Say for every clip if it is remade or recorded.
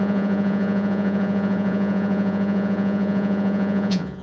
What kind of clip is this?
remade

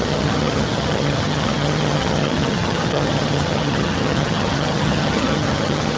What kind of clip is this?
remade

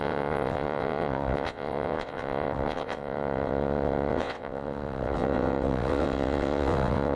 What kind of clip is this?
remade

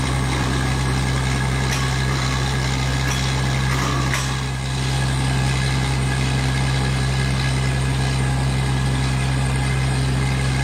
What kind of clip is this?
remade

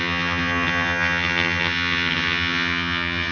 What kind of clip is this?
remade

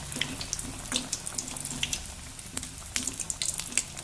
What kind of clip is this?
recorded